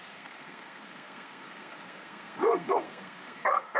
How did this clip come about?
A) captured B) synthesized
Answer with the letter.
B